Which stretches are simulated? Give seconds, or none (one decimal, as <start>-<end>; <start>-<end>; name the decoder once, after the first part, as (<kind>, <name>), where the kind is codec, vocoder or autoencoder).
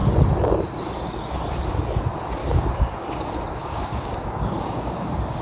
2.4-2.9 (codec, DAC); 3.6-5.4